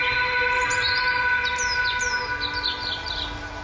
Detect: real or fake real